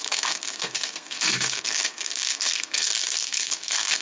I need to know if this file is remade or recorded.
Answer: remade